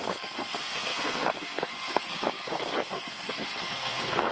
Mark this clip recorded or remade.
remade